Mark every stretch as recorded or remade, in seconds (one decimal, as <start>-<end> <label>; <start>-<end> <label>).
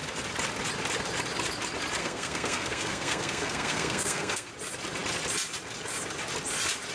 0.0-2.0 recorded; 2.0-4.5 remade; 4.5-6.9 recorded